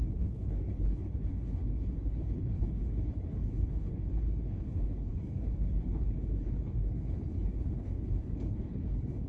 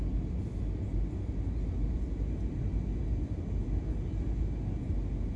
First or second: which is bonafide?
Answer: second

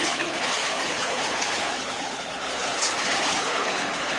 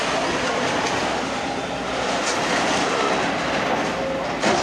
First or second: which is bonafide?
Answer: second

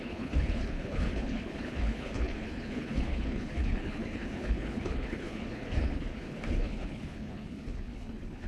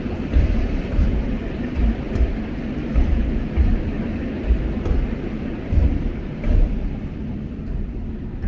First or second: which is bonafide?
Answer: second